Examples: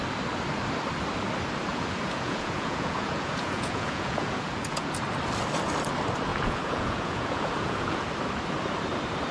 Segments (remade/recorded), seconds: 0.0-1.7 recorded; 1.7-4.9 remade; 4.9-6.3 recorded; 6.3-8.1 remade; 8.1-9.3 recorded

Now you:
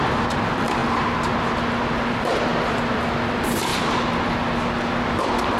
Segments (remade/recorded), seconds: 0.0-0.8 remade; 0.8-2.1 recorded; 2.1-3.7 remade; 3.7-5.0 recorded; 5.0-5.6 remade

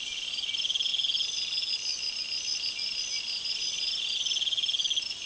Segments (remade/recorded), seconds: 0.0-5.3 recorded

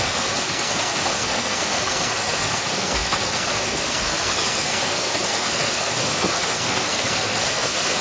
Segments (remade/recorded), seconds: 0.0-8.0 remade

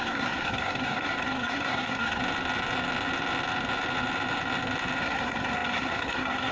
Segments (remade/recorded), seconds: 0.0-2.2 remade; 2.2-5.0 recorded; 5.0-6.5 remade

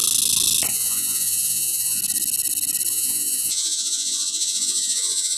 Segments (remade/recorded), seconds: 0.0-0.7 recorded; 0.7-2.0 remade; 2.0-2.9 recorded; 2.9-5.4 remade

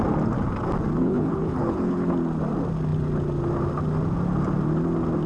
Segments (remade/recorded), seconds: 0.0-1.0 recorded; 1.0-2.1 remade; 2.1-5.3 recorded